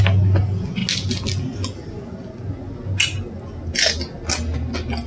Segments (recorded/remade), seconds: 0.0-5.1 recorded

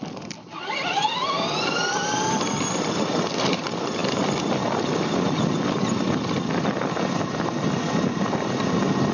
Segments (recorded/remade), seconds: 0.0-9.1 recorded

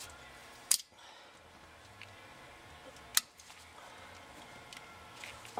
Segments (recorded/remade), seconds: 0.0-0.4 recorded; 0.4-1.2 remade; 1.2-5.6 recorded

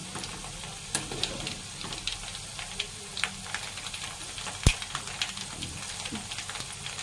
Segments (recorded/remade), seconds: 0.0-1.8 remade; 1.8-3.1 recorded; 3.1-5.1 remade; 5.1-7.0 recorded

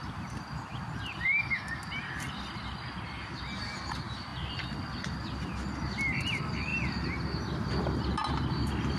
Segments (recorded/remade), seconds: 0.0-9.0 recorded

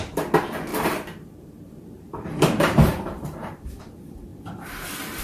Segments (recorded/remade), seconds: 0.0-0.7 recorded; 0.7-3.8 remade; 3.8-5.2 recorded

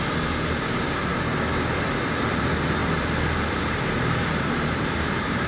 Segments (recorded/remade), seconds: 0.0-1.1 remade; 1.1-2.0 recorded; 2.0-5.5 remade

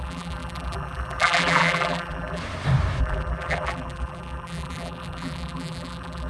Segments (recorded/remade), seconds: 0.0-2.4 remade; 2.4-3.0 recorded; 3.0-6.3 remade